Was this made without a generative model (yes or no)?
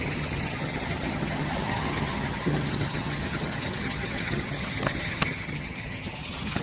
no